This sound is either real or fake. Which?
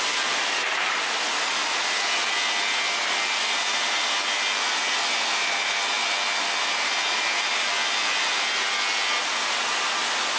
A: real